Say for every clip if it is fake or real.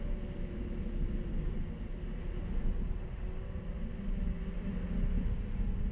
real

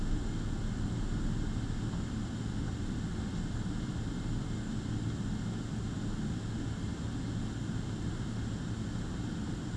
real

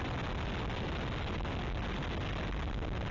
real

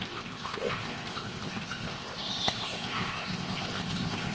fake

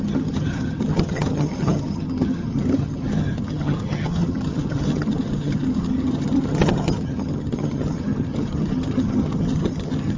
fake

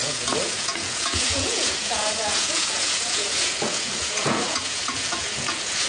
fake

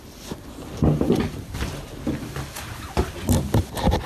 fake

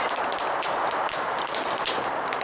real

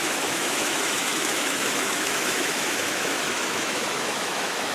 fake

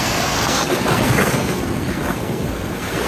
fake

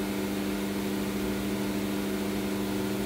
real